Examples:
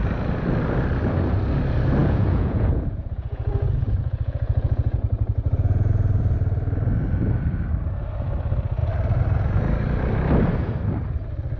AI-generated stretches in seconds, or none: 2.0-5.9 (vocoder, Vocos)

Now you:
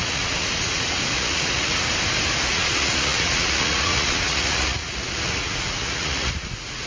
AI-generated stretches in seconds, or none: 0.0-1.9 (vocoder, Vocos); 2.5-6.9

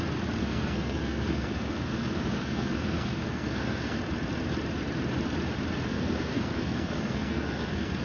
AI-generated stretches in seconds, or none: 0.4-4.0 (codec, SNAC); 5.9-8.0